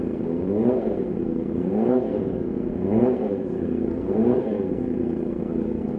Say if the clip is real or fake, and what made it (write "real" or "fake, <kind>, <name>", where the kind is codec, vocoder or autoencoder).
fake, codec, SNAC